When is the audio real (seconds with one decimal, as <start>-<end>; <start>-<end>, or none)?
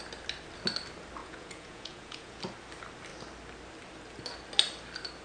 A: 0.0-1.2; 2.4-5.2